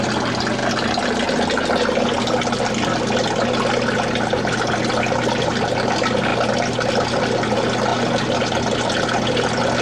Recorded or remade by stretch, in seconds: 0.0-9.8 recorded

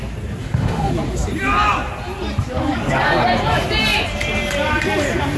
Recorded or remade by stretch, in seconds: 0.0-0.4 recorded; 0.4-0.9 remade; 0.9-5.4 recorded